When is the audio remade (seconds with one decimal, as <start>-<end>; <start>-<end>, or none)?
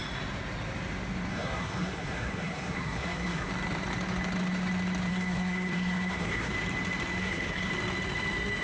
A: 1.3-3.5; 5.1-6.5; 7.2-7.7